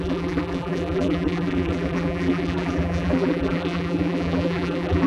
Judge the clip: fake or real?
fake